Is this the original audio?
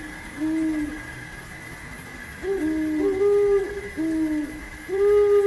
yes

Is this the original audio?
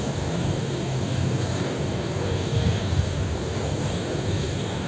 no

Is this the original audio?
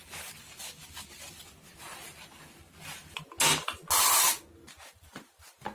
yes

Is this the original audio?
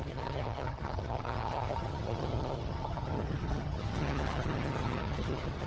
no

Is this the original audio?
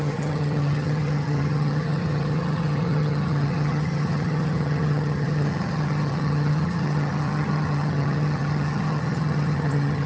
no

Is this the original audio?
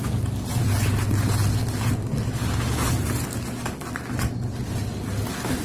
yes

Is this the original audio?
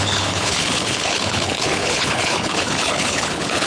no